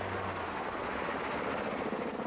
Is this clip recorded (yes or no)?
yes